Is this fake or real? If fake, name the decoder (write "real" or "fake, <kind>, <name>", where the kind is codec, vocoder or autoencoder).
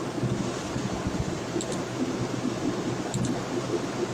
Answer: real